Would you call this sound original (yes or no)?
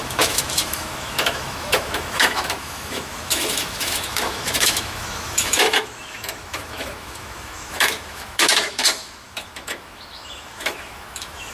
no